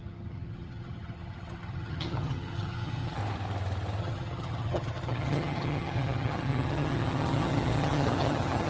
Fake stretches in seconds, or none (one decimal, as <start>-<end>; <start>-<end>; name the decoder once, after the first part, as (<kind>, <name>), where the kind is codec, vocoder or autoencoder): 0.0-3.2 (vocoder, HiFi-GAN); 4.0-8.7

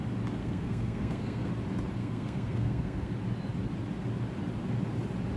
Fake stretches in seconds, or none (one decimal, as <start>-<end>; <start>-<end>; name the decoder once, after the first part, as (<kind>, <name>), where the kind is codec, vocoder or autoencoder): 0.4-1.5 (codec, SNAC); 2.0-3.1

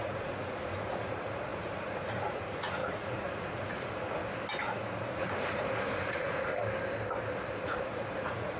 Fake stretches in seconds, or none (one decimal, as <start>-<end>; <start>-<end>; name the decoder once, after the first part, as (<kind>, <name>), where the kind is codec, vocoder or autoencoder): 0.0-4.2 (vocoder, Vocos); 5.0-6.5; 7.6-8.6

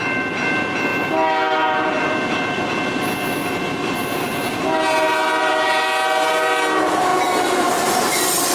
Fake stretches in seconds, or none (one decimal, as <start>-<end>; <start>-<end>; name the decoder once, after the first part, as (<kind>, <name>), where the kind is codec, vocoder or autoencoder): none